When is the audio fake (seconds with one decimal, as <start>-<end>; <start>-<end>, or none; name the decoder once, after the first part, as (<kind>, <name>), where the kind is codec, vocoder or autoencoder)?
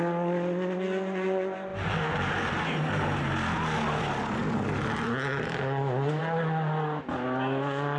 none